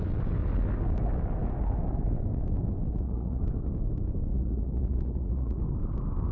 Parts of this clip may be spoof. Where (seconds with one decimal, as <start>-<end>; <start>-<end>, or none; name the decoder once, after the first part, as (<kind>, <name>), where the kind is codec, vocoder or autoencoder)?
2.9-3.4 (vocoder, Vocos); 4.3-5.6